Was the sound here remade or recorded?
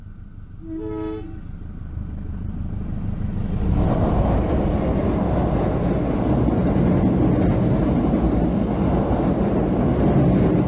recorded